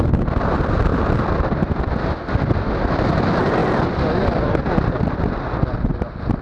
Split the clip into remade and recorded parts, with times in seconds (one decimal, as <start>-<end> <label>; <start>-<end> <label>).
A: 0.0-6.4 recorded